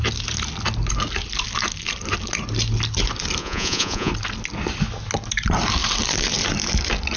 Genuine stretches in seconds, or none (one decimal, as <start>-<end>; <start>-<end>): 0.0-3.4; 4.1-7.2

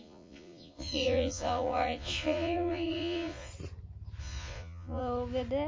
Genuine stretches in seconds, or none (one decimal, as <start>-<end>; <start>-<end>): 3.5-4.2; 5.0-5.7

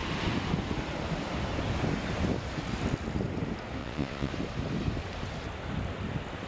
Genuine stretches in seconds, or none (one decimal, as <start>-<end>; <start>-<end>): 0.0-3.8; 4.3-6.5

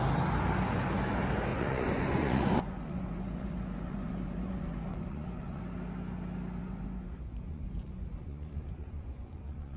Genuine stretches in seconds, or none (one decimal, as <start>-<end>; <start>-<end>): 0.0-1.5; 5.6-6.6

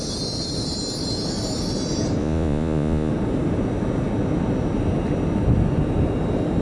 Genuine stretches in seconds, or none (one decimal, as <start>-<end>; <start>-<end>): 0.0-2.2; 3.1-6.6

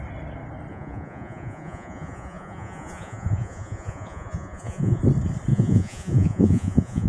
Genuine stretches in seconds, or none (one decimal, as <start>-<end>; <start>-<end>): 0.0-0.7; 5.0-5.5

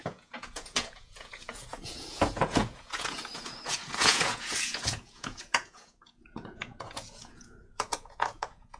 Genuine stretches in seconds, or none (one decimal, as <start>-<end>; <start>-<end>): none